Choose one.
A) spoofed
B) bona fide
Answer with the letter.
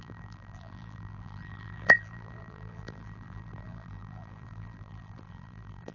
A